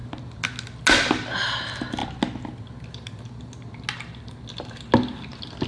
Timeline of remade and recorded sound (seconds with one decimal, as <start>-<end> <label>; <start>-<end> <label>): 0.0-5.7 recorded